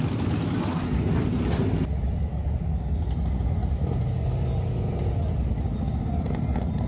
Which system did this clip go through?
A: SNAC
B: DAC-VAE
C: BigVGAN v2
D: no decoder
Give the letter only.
D